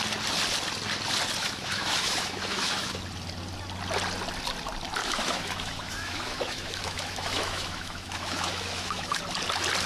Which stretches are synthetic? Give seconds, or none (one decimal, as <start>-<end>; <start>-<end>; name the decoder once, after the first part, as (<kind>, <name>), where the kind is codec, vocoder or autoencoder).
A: 1.4-3.0 (autoencoder, DAC-VAE); 5.0-9.2